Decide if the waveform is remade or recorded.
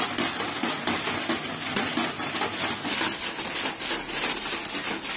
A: recorded